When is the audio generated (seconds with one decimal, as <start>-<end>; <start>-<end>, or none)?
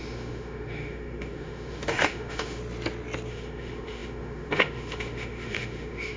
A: 0.0-2.6; 3.3-6.2